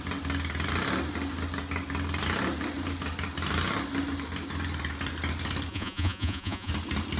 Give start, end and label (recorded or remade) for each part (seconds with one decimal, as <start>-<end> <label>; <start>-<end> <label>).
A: 0.0-5.7 recorded; 5.7-6.7 remade; 6.7-7.2 recorded